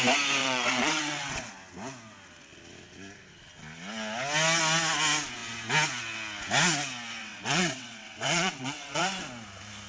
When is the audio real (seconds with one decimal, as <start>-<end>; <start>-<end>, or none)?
0.0-0.4; 1.4-7.2; 9.0-9.9